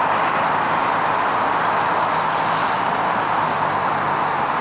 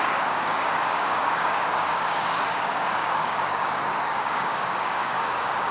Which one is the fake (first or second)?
second